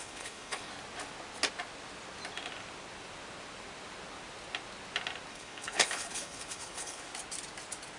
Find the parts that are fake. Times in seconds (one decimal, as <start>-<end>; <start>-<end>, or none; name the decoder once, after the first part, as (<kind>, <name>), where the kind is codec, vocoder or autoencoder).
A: 0.0-0.7 (codec, HILCodec); 5.3-7.1